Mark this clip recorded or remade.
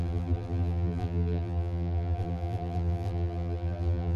remade